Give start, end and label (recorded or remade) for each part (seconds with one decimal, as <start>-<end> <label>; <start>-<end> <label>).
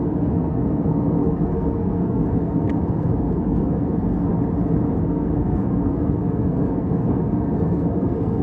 0.0-4.3 remade; 4.3-5.0 recorded; 5.0-8.4 remade